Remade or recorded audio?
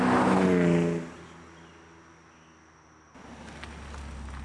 recorded